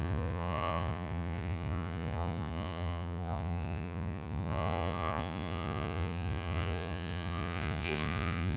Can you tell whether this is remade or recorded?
remade